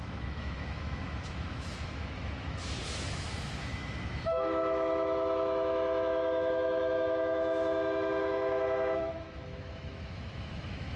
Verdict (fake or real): fake